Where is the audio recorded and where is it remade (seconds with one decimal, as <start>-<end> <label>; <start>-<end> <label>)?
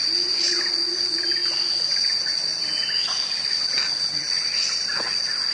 0.0-5.5 recorded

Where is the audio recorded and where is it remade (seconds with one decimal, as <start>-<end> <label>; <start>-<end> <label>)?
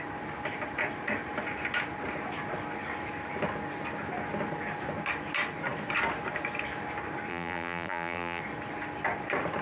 0.0-7.3 recorded; 7.3-8.4 remade; 8.4-9.6 recorded